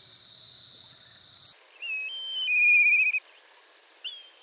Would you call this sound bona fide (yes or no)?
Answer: yes